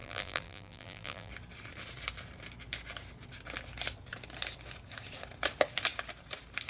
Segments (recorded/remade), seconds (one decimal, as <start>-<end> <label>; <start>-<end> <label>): 0.0-1.3 remade; 1.3-6.7 recorded